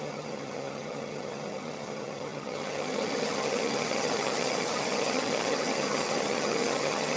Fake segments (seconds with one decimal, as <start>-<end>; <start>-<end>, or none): 0.0-7.2